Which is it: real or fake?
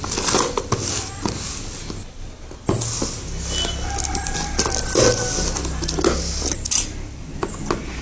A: real